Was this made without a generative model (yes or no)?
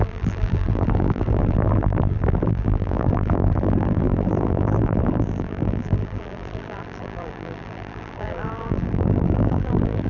no